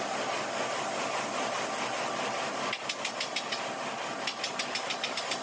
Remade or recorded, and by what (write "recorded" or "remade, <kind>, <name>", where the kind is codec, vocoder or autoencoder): recorded